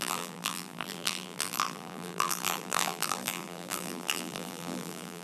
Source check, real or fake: fake